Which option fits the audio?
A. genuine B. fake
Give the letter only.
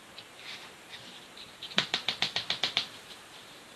B